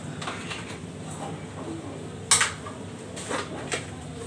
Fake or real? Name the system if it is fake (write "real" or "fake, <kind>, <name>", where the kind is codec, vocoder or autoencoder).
real